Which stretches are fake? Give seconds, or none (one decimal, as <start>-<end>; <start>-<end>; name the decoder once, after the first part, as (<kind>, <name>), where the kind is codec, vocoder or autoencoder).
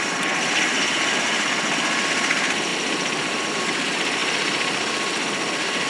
none